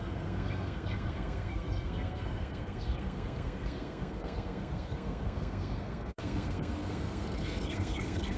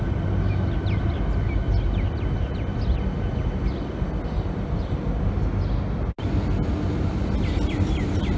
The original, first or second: second